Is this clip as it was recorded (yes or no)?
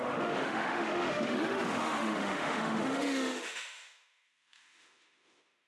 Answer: no